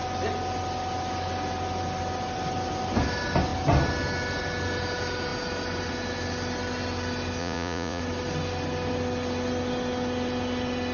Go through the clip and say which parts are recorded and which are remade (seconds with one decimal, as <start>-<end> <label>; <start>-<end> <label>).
0.0-7.4 recorded; 7.4-8.0 remade; 8.0-10.9 recorded